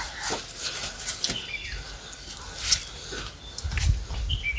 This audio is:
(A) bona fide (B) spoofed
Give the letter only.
A